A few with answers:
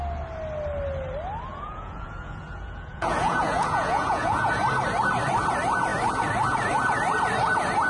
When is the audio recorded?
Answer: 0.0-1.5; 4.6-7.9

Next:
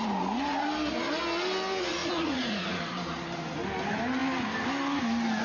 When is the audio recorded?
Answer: 0.0-2.0; 2.8-5.4

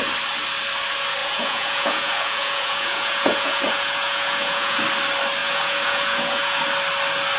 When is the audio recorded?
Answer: 0.0-1.2; 4.8-5.4; 6.6-7.4

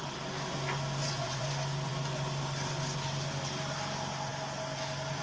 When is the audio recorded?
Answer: 0.0-1.0; 1.5-5.2

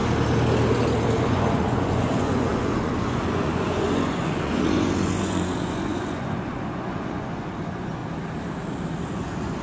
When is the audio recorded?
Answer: 0.0-1.2; 8.0-9.1